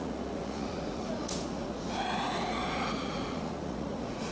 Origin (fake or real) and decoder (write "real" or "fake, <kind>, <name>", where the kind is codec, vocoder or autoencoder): fake, vocoder, Vocos